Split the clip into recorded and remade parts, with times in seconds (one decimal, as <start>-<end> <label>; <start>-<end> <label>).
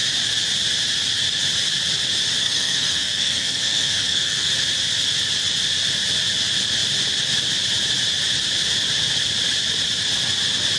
0.0-2.4 recorded; 2.4-4.5 remade; 4.5-10.8 recorded